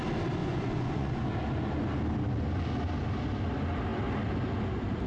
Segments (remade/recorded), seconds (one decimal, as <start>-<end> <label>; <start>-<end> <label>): 0.0-0.4 recorded; 0.4-1.2 remade; 1.2-5.1 recorded